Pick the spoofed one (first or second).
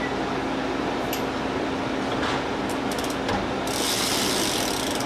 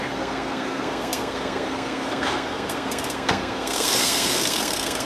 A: second